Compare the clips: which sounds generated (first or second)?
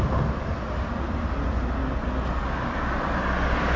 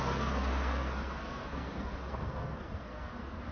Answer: second